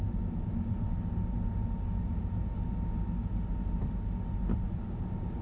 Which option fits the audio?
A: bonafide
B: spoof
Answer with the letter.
A